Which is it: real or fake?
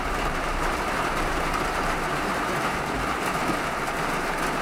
fake